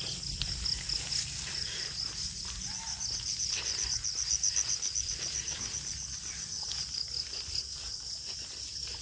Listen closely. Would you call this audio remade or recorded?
recorded